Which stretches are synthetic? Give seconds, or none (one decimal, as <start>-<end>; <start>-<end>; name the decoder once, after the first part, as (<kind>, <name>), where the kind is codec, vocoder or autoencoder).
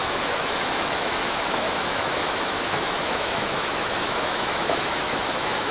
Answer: 0.0-5.7 (autoencoder, DAC-VAE)